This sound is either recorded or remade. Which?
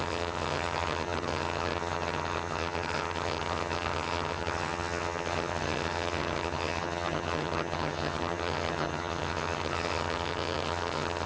remade